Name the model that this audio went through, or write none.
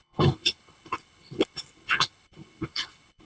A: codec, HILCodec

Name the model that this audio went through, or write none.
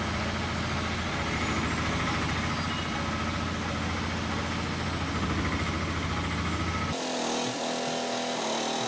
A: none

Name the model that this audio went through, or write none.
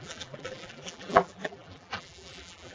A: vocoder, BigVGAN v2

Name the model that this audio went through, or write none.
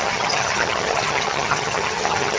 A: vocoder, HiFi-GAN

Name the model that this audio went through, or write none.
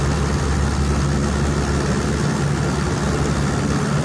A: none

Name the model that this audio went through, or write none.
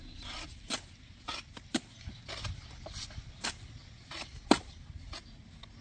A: none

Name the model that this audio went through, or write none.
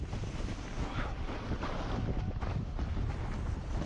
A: vocoder, BigVGAN v2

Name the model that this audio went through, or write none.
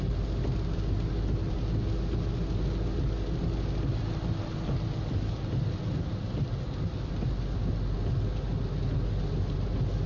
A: none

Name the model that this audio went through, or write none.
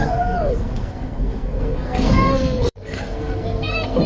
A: codec, SNAC